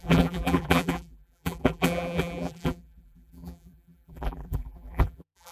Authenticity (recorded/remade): remade